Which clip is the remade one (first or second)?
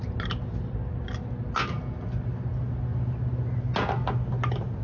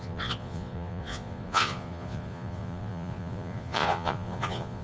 second